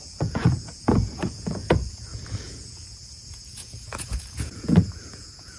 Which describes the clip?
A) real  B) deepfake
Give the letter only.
B